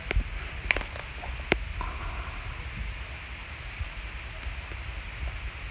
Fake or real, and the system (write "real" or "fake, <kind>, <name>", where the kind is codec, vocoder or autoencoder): real